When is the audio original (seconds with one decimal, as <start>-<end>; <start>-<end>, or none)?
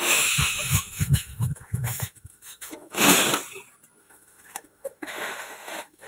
3.2-4.0